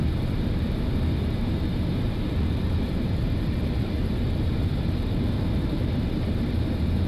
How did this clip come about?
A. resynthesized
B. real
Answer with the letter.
A